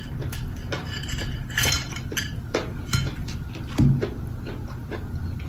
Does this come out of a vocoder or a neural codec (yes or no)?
no